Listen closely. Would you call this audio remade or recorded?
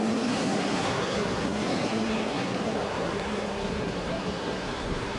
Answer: remade